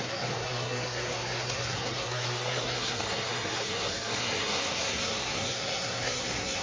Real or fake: fake